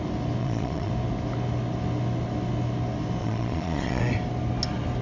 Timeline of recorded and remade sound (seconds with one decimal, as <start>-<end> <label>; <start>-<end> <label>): 0.0-0.4 recorded; 0.4-0.9 remade; 0.9-3.2 recorded; 3.2-4.0 remade; 4.0-5.0 recorded